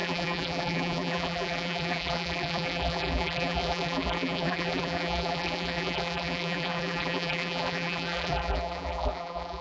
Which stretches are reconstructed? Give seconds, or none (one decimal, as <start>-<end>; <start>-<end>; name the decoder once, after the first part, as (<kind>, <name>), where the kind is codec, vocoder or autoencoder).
0.0-9.6 (vocoder, BigVGAN v2)